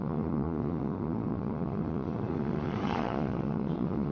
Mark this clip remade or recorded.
remade